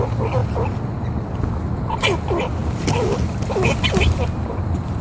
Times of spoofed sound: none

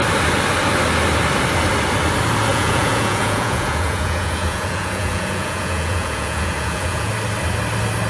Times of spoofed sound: 2.5-7.1

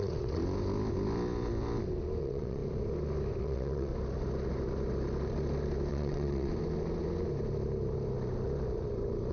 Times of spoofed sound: 0.0-0.4; 2.2-2.6; 3.4-3.9; 5.9-6.5

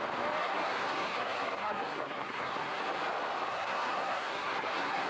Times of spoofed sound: 0.4-2.8; 3.5-5.1

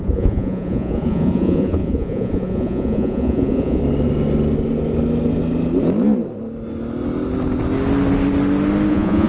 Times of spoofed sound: 0.0-3.8; 8.9-9.3

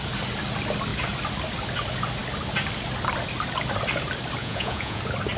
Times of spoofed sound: 4.4-5.0

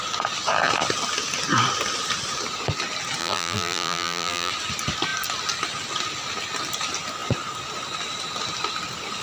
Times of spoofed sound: 3.2-4.5

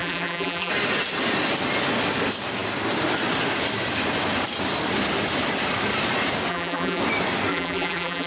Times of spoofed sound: 0.0-0.7; 6.5-7.0; 7.5-8.3